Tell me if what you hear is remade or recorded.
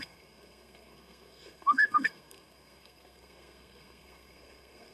remade